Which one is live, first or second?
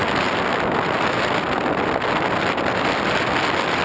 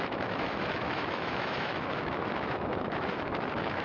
first